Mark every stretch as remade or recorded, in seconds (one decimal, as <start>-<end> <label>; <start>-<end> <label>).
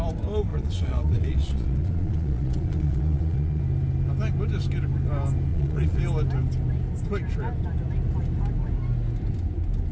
0.0-0.5 recorded; 0.5-3.6 remade; 3.6-5.5 recorded; 5.5-6.0 remade; 6.0-9.9 recorded